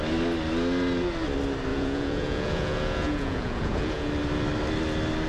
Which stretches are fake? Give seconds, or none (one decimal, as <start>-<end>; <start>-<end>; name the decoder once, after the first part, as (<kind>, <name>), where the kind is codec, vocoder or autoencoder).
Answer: 1.7-4.1 (vocoder, Vocos)